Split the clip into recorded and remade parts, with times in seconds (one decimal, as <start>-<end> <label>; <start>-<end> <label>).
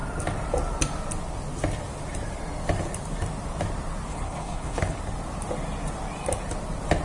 0.0-4.1 recorded; 4.1-5.0 remade; 5.0-7.0 recorded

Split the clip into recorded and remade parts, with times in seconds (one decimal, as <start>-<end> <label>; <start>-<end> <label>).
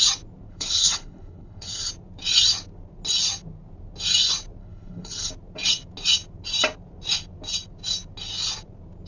0.0-0.5 recorded; 0.5-1.9 remade; 1.9-4.6 recorded; 4.6-5.3 remade; 5.3-9.1 recorded